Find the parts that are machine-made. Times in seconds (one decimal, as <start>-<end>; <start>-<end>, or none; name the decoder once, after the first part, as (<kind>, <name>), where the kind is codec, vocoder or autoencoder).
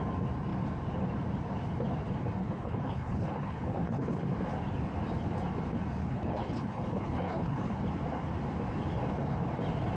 2.4-4.2 (codec, HILCodec); 6.0-7.8